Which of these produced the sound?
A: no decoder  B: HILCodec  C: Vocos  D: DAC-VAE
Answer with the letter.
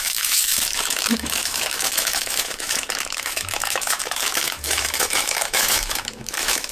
D